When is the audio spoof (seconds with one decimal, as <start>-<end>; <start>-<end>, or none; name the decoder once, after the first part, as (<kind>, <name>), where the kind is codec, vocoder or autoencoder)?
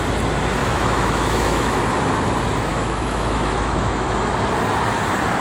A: 0.6-1.8 (autoencoder, DAC-VAE); 2.7-4.3